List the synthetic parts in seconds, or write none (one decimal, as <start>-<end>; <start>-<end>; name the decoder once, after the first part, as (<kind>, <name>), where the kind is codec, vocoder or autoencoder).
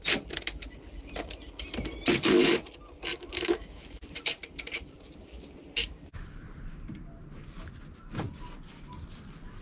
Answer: 3.1-4.1 (autoencoder, DAC-VAE)